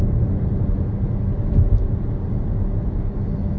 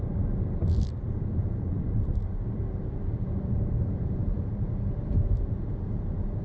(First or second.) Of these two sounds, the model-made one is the second